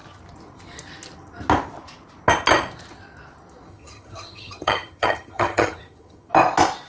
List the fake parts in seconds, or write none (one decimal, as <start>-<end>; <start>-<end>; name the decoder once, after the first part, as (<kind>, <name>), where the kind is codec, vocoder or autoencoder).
3.7-6.3 (vocoder, HiFi-GAN)